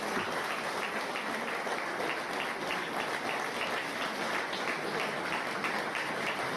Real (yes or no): yes